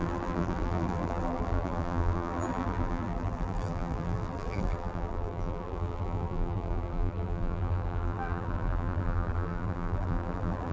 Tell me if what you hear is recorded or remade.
remade